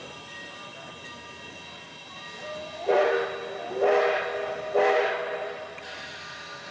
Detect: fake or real real